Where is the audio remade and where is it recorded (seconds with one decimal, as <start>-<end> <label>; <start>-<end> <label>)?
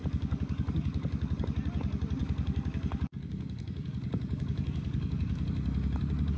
0.0-1.4 remade; 1.4-2.2 recorded; 2.2-6.0 remade; 6.0-6.4 recorded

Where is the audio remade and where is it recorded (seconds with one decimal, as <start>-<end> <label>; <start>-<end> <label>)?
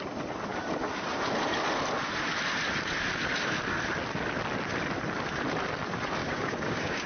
0.0-6.2 recorded; 6.2-7.1 remade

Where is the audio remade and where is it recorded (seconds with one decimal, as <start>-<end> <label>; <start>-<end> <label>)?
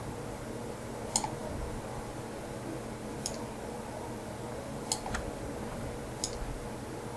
0.0-7.2 recorded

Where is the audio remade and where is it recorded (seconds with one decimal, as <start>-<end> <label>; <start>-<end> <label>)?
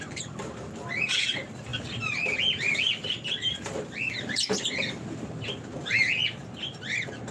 0.0-7.3 recorded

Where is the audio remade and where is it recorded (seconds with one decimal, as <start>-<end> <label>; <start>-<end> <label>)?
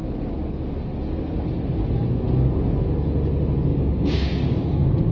0.0-3.7 recorded; 3.7-4.3 remade; 4.3-5.1 recorded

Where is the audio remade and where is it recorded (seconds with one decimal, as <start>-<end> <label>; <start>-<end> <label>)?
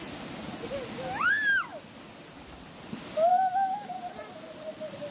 0.0-3.3 recorded; 3.3-4.0 remade; 4.0-5.1 recorded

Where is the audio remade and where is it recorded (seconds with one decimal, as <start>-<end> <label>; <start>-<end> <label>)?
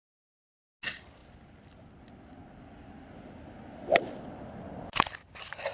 0.0-5.7 recorded